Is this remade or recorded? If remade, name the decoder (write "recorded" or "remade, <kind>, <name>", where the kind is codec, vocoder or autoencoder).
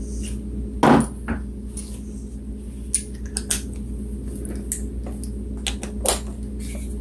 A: recorded